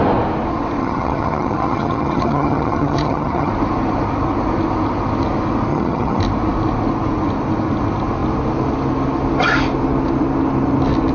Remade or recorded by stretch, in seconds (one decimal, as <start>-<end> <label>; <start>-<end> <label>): 0.0-0.8 recorded; 0.8-3.5 remade; 3.5-5.7 recorded; 5.7-6.2 remade; 6.2-11.1 recorded